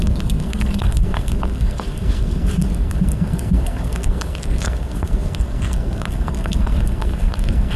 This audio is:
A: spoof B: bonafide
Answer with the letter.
A